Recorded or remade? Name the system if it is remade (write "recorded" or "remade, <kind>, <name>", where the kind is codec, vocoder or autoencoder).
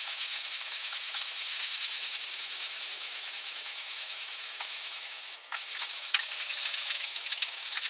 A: remade, autoencoder, DAC-VAE